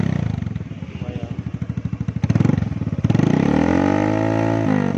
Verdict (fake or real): real